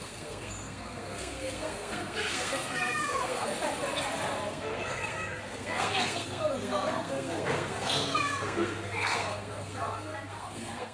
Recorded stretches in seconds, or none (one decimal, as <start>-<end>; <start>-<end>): 3.5-4.5